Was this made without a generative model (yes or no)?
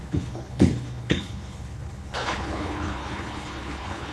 no